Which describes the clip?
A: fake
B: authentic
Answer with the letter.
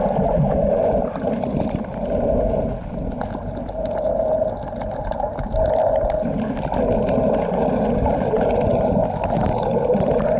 B